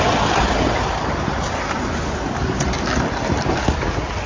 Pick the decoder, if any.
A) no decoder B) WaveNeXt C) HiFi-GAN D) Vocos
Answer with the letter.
A